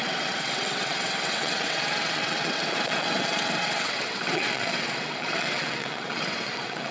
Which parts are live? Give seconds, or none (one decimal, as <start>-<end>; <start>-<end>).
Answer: none